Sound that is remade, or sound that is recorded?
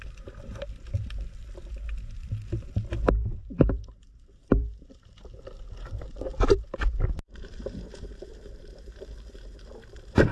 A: remade